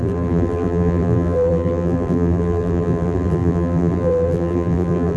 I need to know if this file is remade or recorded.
remade